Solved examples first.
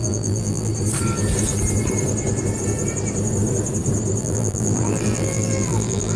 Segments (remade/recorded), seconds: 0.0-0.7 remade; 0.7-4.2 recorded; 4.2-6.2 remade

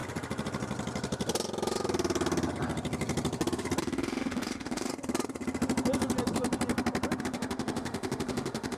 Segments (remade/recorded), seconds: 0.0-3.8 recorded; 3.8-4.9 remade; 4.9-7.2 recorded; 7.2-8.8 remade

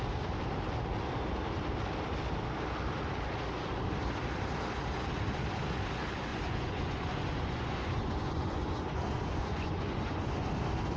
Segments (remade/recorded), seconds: 0.0-6.3 recorded; 6.3-10.5 remade; 10.5-11.0 recorded